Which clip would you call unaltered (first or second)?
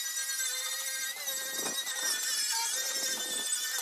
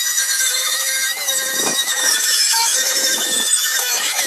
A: first